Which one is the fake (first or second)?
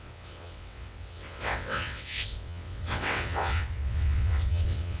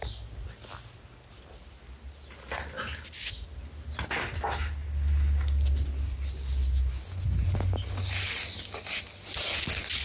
first